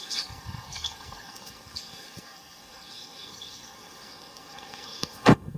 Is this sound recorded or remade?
remade